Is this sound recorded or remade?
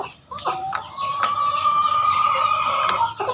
recorded